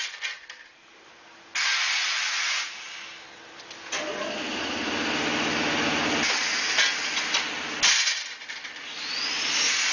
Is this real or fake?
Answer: real